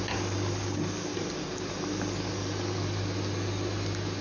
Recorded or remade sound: recorded